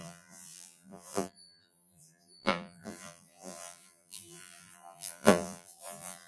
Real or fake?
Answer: fake